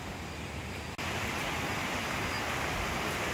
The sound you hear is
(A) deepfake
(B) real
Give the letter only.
B